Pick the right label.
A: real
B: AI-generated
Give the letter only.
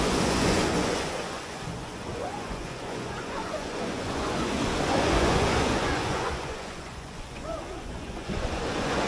B